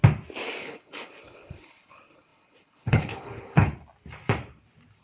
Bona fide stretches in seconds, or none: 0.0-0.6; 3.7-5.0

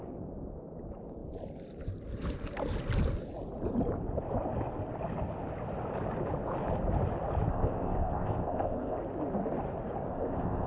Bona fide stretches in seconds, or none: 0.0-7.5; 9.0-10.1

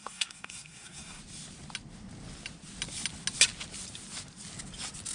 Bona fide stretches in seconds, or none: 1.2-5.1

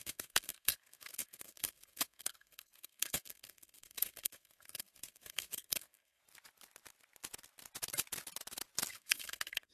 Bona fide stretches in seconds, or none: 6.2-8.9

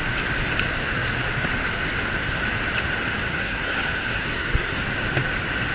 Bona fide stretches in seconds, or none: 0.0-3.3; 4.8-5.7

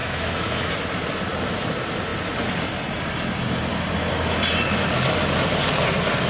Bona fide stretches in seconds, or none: 0.7-6.3

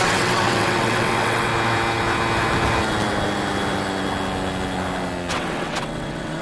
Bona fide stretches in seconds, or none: 1.5-5.3